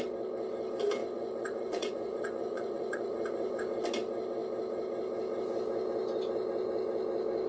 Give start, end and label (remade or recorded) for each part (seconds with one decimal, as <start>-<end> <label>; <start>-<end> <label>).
0.0-1.0 recorded; 1.0-3.6 remade; 3.6-7.5 recorded